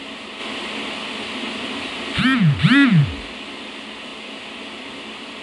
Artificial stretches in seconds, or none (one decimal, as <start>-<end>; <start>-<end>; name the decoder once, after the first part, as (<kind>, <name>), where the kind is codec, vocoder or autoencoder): none